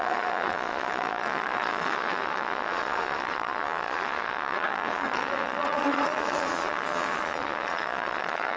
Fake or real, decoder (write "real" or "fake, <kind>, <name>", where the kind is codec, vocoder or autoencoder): fake, vocoder, Vocos